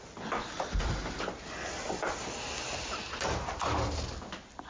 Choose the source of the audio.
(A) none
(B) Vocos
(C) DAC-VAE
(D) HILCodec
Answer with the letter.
A